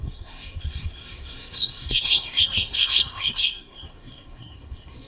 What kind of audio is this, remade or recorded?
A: remade